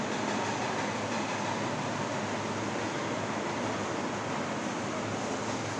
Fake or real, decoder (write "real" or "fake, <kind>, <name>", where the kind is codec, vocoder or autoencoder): real